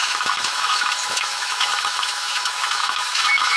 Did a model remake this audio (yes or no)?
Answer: yes